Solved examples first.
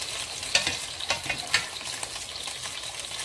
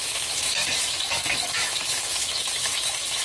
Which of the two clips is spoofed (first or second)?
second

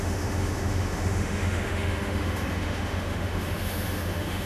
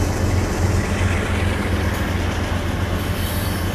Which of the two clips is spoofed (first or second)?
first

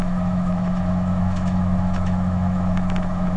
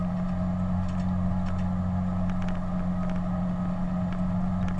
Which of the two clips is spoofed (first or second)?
first